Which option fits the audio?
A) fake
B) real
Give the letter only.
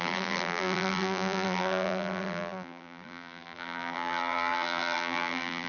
A